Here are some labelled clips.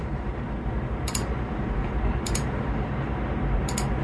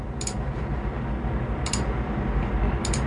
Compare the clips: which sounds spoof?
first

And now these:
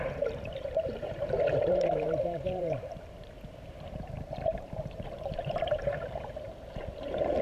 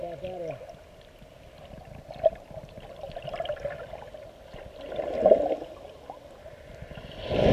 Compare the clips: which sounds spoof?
first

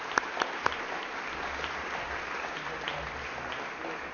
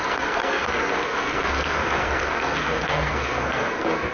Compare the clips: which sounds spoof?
second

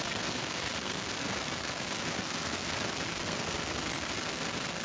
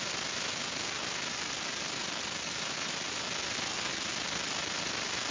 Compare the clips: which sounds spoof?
first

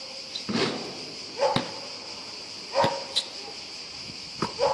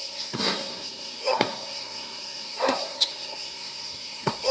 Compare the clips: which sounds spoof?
second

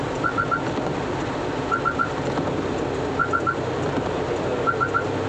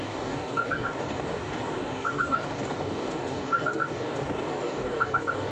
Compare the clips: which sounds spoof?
second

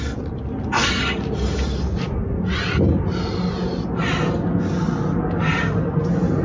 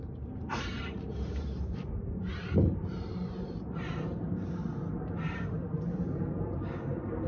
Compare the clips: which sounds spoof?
second